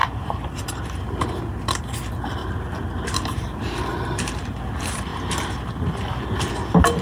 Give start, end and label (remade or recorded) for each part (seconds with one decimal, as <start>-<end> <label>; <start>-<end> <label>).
0.0-1.0 remade; 1.0-2.4 recorded; 2.4-4.3 remade; 4.3-7.0 recorded